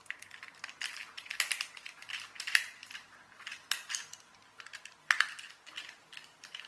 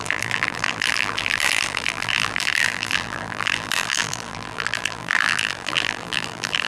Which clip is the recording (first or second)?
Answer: first